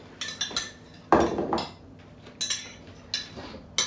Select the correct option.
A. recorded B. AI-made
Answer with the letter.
A